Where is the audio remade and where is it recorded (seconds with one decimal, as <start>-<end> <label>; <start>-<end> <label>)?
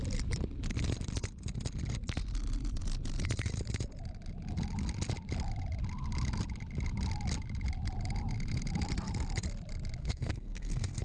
0.0-10.0 recorded; 10.0-11.0 remade